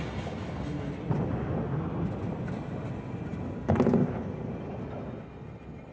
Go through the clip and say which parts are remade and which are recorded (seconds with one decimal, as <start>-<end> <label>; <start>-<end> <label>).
0.0-5.9 recorded